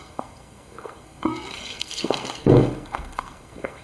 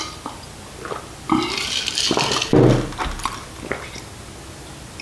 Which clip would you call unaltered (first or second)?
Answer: second